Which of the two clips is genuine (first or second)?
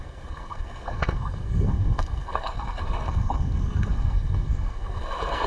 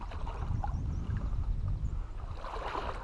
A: second